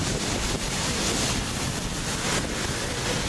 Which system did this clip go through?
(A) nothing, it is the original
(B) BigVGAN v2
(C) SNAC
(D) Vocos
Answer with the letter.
A